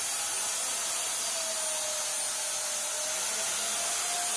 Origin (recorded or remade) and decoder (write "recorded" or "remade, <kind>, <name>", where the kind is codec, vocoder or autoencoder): recorded